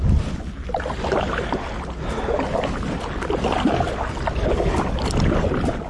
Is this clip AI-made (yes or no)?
no